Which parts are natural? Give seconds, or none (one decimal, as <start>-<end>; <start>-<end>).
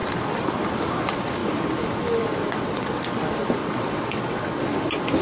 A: 0.0-2.4; 3.0-3.6; 4.6-5.2